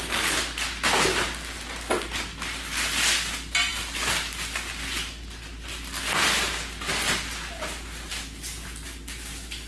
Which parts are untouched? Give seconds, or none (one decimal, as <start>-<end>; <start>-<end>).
0.0-9.7